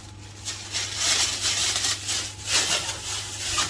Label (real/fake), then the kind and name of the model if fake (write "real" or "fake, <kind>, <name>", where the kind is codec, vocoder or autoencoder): real